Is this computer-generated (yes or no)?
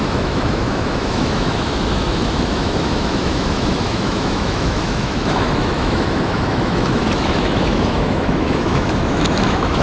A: yes